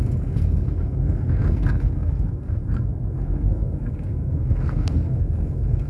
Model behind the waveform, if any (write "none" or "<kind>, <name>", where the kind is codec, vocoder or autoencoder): codec, SNAC